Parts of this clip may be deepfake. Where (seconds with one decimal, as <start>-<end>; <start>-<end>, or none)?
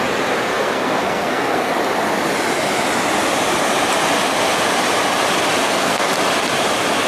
0.5-1.7; 5.6-6.1